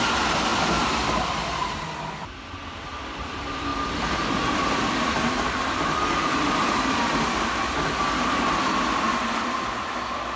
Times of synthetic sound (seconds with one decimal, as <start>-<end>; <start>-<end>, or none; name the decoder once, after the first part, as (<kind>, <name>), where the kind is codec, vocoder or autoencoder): 3.7-5.8 (vocoder, BigVGAN v2)